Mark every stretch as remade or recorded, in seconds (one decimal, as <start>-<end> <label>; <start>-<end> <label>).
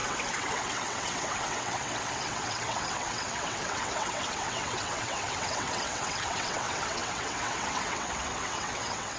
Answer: 0.0-9.2 remade